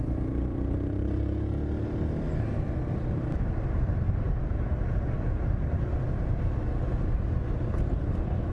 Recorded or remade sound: recorded